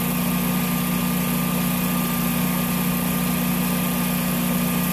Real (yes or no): yes